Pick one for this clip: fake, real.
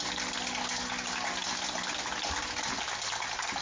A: real